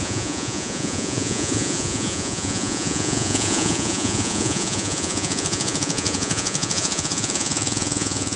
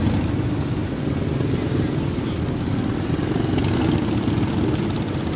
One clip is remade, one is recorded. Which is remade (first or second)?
first